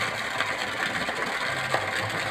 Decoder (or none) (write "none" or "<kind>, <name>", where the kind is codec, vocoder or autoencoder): none